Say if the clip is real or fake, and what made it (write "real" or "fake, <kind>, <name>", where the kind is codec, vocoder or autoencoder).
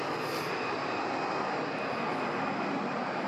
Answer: real